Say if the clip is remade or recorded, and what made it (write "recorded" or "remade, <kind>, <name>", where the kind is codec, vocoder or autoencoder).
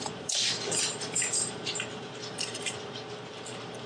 remade, vocoder, BigVGAN v2